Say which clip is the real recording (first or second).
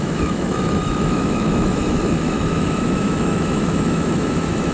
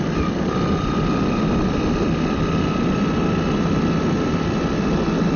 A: second